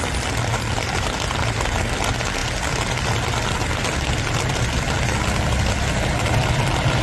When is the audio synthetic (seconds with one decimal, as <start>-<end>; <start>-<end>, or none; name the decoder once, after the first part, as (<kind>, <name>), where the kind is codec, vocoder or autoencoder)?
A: none